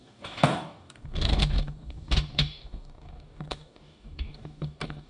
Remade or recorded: remade